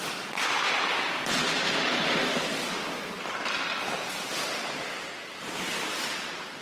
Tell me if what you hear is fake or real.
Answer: fake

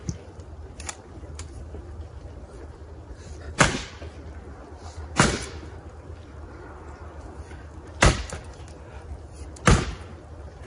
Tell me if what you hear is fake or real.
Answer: real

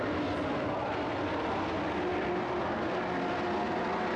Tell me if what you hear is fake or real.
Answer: real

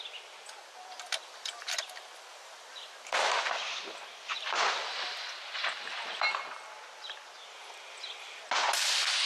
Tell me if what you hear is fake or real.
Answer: real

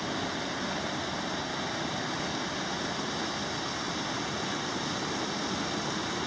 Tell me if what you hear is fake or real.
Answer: real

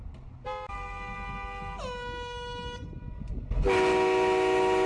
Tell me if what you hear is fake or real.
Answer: real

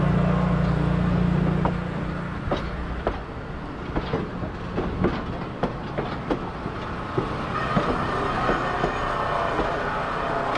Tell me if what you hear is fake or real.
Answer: real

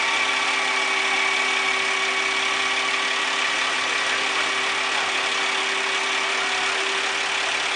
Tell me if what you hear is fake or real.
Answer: real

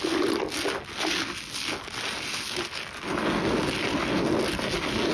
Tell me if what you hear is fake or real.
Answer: real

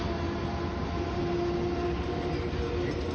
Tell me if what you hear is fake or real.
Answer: real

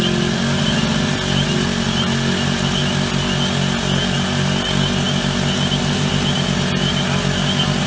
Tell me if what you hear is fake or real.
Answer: real